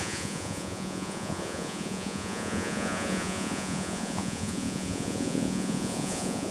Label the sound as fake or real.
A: fake